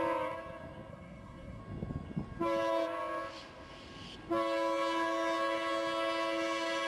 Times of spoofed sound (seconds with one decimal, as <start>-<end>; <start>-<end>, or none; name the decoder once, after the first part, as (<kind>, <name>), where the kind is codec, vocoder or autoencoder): 0.9-1.6 (codec, SNAC)